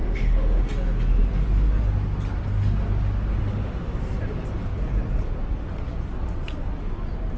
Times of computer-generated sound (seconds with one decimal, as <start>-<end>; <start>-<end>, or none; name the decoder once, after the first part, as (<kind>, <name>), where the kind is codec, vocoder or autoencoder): 0.0-0.6 (autoencoder, DAC-VAE); 3.4-4.0

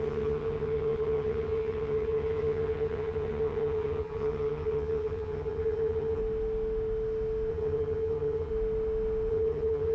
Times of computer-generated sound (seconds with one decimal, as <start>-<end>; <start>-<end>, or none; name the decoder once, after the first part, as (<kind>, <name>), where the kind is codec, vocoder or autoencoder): 0.0-6.2 (vocoder, HiFi-GAN); 7.5-8.5; 9.3-9.9

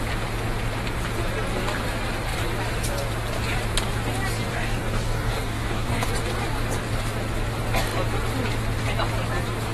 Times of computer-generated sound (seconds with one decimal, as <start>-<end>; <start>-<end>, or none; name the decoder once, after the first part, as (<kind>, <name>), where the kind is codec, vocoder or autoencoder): 4.5-6.1 (codec, DAC)

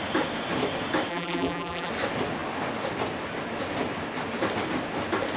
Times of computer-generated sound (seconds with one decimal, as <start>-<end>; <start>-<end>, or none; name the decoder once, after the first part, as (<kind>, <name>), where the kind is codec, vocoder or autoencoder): 1.1-1.9 (vocoder, BigVGAN v2)

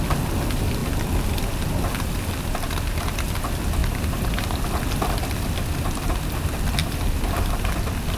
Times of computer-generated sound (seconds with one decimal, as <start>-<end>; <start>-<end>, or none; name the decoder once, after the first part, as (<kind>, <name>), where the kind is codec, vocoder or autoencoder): 3.8-4.6 (vocoder, BigVGAN v2); 6.8-7.7

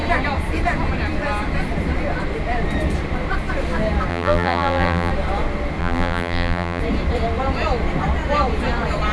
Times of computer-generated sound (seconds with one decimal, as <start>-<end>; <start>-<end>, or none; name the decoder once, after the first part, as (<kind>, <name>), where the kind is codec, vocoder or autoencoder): 4.1-5.1 (vocoder, BigVGAN v2); 5.8-6.8